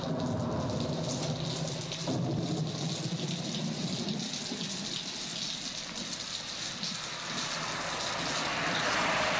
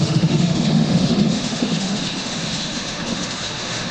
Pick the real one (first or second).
first